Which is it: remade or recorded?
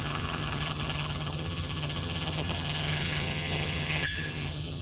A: remade